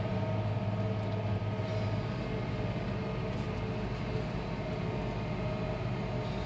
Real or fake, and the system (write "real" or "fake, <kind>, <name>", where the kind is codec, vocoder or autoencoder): real